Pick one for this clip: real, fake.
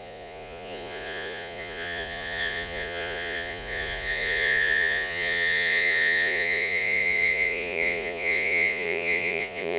fake